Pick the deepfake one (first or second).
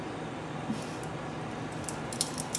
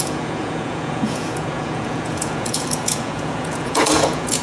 second